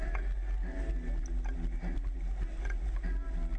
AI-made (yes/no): no